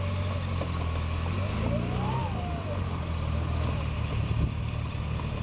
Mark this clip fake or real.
real